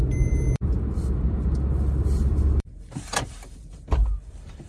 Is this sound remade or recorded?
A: remade